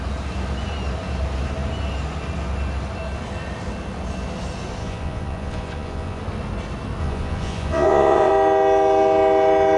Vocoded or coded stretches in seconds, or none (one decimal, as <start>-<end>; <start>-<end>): 4.8-6.2; 7.0-8.3